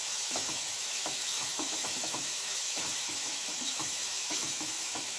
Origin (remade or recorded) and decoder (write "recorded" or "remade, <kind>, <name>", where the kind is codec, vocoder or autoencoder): remade, autoencoder, DAC-VAE